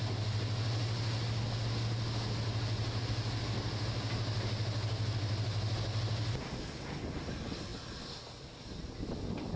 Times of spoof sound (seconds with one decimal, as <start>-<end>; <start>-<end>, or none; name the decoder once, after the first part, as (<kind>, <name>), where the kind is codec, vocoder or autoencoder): none